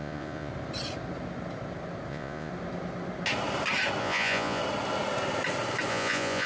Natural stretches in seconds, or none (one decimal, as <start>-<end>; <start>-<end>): 0.5-2.1; 2.5-4.0; 4.6-5.9